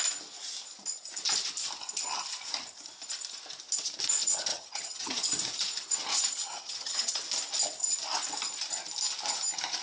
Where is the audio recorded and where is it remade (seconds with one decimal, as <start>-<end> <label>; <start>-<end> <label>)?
0.0-4.5 recorded; 4.5-5.1 remade; 5.1-6.1 recorded; 6.1-7.2 remade; 7.2-9.8 recorded